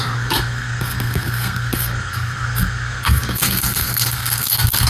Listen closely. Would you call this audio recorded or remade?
remade